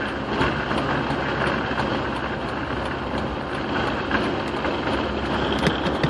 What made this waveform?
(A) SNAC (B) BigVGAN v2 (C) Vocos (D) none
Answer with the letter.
D